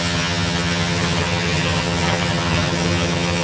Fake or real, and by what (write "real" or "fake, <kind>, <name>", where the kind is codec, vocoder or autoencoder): fake, vocoder, HiFi-GAN